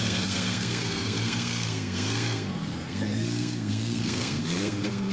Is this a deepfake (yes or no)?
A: yes